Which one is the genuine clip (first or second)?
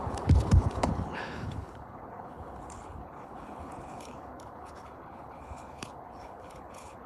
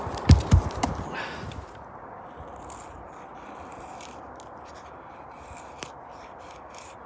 second